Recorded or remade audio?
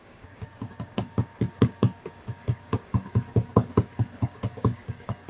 remade